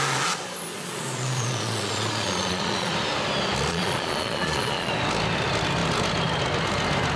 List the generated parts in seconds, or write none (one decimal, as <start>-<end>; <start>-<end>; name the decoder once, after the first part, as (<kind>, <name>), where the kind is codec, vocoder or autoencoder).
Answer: 0.7-2.9 (vocoder, Vocos); 3.7-4.9